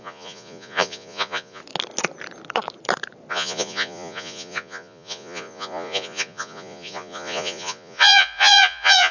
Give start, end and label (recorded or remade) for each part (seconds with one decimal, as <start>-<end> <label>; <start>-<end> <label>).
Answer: 0.0-1.6 remade; 1.6-3.3 recorded; 3.3-9.1 remade